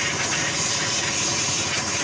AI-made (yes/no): yes